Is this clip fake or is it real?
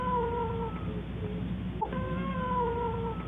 real